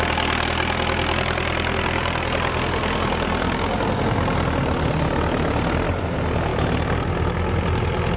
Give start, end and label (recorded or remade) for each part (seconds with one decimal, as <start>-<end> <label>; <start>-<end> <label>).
0.0-8.2 recorded